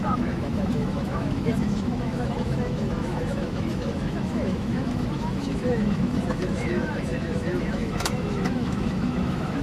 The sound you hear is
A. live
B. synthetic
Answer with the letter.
B